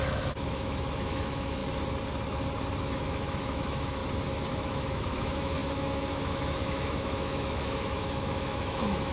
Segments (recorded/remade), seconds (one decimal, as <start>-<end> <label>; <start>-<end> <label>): 0.0-1.6 remade; 1.6-2.8 recorded; 2.8-4.0 remade; 4.0-4.5 recorded; 4.5-9.1 remade